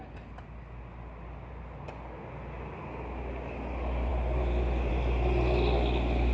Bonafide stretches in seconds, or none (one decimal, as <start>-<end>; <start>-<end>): 0.0-6.3